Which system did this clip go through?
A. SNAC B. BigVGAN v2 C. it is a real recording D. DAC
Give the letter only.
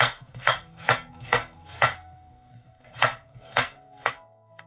A